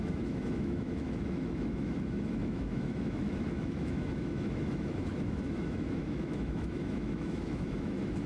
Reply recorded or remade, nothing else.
remade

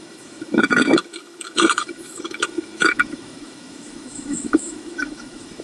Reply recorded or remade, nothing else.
remade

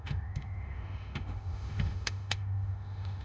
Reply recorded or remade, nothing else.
remade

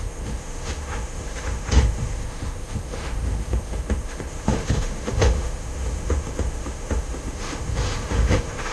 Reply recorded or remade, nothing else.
remade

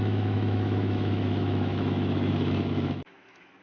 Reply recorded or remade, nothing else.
remade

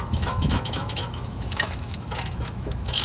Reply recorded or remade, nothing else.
remade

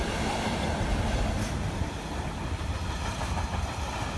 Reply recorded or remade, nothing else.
recorded